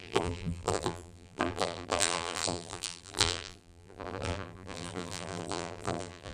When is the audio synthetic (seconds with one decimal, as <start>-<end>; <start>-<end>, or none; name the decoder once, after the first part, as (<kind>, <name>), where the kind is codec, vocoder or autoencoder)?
0.0-6.3 (vocoder, BigVGAN v2)

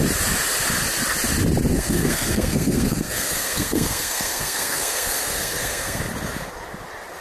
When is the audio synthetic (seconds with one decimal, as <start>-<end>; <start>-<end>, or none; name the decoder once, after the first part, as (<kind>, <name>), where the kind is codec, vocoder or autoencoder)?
1.7-6.0 (codec, SNAC)

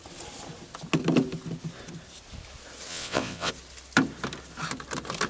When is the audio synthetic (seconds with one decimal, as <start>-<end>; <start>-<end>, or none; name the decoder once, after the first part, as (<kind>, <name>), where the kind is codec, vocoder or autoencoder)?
2.9-3.5 (vocoder, WaveNeXt)

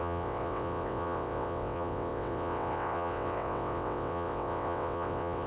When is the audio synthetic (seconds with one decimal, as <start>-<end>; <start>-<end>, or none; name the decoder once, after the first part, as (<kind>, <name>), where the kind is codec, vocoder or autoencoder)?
0.0-5.5 (vocoder, WaveNeXt)

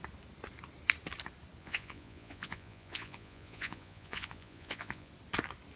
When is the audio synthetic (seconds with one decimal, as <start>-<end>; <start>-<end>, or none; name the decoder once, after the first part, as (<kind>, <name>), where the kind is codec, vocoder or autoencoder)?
1.6-5.1 (vocoder, Vocos)

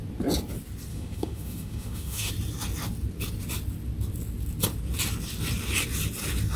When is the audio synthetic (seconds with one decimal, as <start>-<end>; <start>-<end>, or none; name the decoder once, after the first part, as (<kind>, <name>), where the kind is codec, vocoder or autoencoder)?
0.9-2.3 (autoencoder, DAC-VAE)

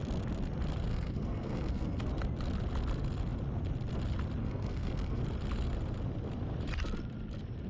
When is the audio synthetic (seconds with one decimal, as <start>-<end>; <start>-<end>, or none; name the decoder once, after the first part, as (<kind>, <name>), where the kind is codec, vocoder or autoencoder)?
0.9-2.1 (codec, SNAC); 4.4-5.2

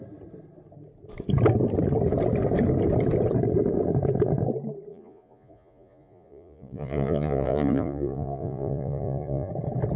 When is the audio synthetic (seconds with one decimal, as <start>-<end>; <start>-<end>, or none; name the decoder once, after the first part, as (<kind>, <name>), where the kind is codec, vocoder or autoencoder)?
4.9-9.5 (vocoder, Vocos)